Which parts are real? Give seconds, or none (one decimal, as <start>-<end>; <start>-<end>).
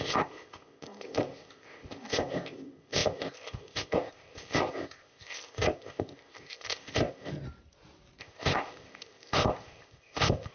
7.3-8.2